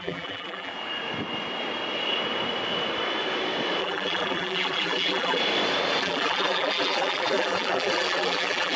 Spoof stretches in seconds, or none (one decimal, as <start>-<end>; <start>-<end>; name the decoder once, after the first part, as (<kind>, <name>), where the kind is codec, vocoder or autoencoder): 0.0-0.7 (vocoder, BigVGAN v2); 3.8-5.4; 6.0-8.8